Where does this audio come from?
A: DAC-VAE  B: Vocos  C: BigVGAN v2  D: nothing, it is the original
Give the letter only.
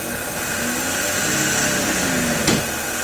D